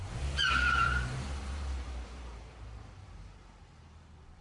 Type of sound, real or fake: fake